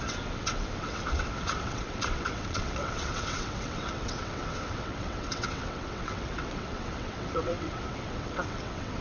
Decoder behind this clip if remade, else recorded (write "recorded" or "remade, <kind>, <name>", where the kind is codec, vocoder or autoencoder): remade, vocoder, WaveNeXt